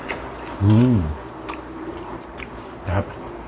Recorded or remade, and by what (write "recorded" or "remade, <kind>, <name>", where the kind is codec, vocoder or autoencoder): remade, vocoder, BigVGAN v2